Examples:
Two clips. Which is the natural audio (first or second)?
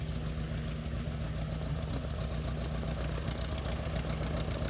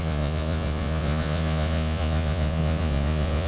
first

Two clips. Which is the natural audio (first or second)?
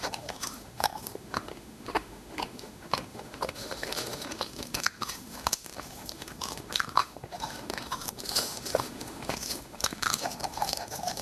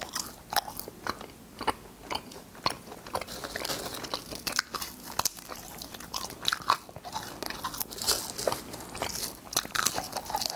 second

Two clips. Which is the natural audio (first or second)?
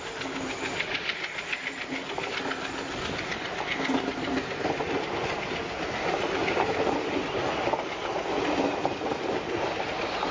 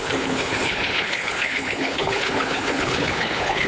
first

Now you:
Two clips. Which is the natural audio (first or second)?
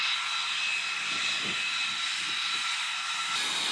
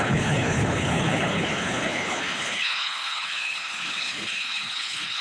first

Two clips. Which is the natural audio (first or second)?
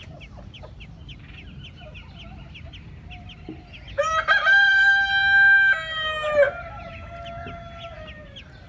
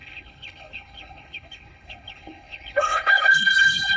first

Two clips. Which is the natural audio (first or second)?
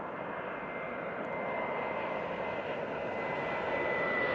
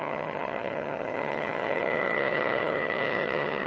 first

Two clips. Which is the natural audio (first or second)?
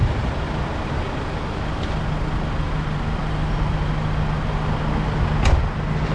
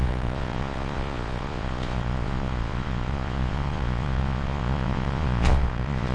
first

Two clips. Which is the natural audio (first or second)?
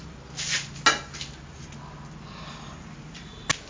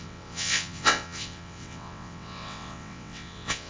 first